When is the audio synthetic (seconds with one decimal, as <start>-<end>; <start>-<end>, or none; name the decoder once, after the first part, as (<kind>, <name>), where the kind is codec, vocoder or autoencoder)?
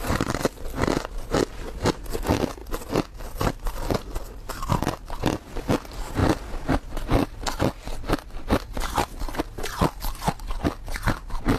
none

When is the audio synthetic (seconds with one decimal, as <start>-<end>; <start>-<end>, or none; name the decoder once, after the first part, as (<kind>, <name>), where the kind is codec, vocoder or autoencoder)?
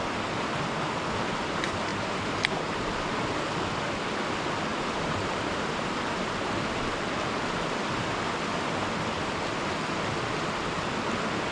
1.9-3.1 (vocoder, BigVGAN v2); 4.7-6.8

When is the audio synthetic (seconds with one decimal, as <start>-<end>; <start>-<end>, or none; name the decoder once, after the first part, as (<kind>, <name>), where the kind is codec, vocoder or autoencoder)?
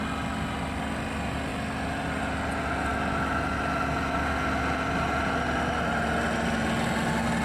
none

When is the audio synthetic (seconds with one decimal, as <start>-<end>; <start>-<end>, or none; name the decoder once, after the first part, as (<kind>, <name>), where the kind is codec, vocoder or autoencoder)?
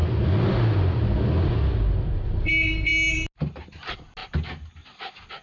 none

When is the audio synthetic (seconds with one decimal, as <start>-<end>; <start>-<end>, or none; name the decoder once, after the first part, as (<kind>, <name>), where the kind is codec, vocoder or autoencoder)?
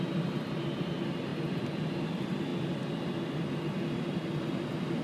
none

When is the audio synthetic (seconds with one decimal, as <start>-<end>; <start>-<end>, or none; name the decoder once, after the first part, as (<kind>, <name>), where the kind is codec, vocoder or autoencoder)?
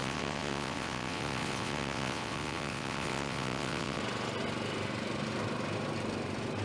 0.0-4.0 (vocoder, WaveNeXt)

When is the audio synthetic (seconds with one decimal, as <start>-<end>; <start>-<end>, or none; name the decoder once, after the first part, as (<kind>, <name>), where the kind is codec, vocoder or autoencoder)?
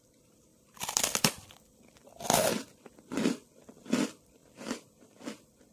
0.5-1.8 (vocoder, BigVGAN v2); 4.4-5.1